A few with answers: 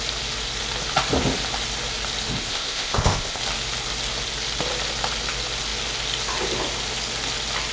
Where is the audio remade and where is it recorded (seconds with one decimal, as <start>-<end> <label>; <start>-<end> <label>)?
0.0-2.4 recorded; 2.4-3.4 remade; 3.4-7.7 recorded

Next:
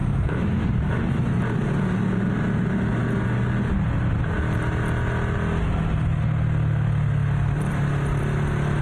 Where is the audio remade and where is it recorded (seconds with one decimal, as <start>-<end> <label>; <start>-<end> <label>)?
0.0-1.4 remade; 1.4-8.8 recorded

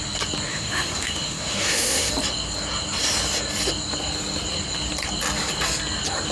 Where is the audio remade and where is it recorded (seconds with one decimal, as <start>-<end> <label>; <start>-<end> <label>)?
0.0-0.5 recorded; 0.5-2.1 remade; 2.1-6.3 recorded